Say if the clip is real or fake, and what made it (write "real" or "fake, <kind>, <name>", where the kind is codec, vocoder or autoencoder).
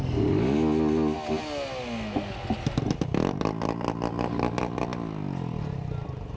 real